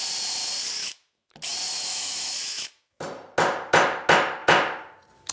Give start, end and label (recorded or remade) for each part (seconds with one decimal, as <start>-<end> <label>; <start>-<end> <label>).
0.0-0.8 recorded; 0.8-1.3 remade; 1.3-1.9 recorded; 1.9-3.0 remade; 3.0-5.3 recorded